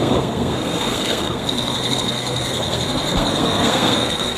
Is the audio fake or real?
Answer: fake